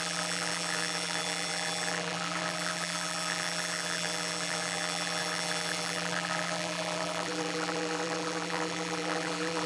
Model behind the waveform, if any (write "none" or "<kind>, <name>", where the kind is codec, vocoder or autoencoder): vocoder, BigVGAN v2